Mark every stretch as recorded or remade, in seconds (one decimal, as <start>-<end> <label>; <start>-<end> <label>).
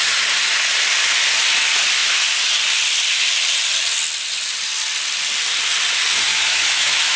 0.0-6.3 recorded; 6.3-7.2 remade